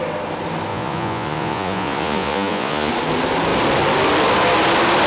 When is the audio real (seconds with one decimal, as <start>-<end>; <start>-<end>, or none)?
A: 0.0-0.7; 2.9-5.1